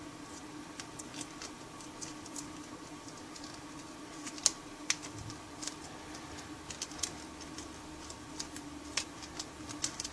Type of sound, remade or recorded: recorded